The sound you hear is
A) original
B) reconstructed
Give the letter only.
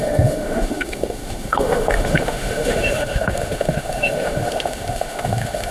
B